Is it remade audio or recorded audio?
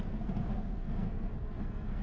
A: remade